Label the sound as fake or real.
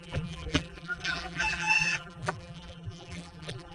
fake